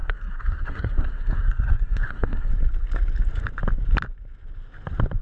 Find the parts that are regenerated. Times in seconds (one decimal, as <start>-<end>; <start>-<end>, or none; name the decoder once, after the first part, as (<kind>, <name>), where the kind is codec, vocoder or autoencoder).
0.0-2.5 (codec, SNAC)